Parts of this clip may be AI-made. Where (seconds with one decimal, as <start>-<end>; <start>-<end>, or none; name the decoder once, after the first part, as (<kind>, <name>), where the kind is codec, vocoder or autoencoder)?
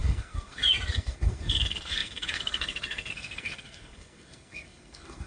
0.0-5.3 (codec, SNAC)